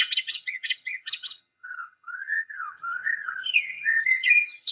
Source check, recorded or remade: remade